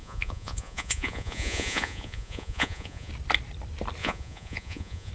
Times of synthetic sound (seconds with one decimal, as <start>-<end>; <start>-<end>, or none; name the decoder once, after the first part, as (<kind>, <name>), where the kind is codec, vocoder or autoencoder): 0.0-3.1 (vocoder, Vocos); 4.0-5.1